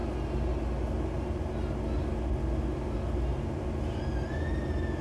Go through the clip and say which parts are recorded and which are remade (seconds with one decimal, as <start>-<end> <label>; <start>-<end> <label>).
0.0-3.3 recorded; 3.3-4.0 remade; 4.0-5.0 recorded

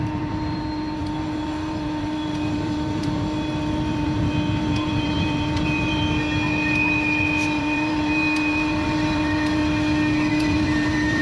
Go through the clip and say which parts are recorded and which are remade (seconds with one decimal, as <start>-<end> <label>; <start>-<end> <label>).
0.0-6.0 remade; 6.0-7.6 recorded; 7.6-9.6 remade; 9.6-10.3 recorded; 10.3-11.2 remade

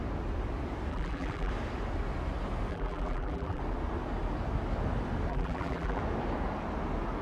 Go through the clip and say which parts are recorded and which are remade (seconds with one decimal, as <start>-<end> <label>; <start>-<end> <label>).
0.0-0.9 recorded; 0.9-1.5 remade; 1.5-2.7 recorded; 2.7-3.6 remade; 3.6-5.3 recorded; 5.3-6.0 remade; 6.0-7.2 recorded